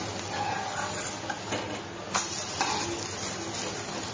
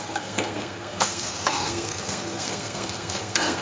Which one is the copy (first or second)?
second